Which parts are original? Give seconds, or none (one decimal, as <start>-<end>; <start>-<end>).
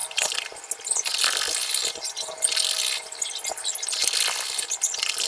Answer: 0.0-5.3